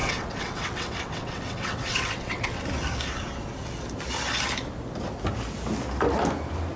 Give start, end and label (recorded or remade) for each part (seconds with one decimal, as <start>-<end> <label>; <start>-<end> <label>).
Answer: 0.0-2.6 remade; 2.6-6.8 recorded